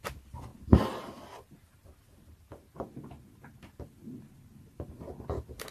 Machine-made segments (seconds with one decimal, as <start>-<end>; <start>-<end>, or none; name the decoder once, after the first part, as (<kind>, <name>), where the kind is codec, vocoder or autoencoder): none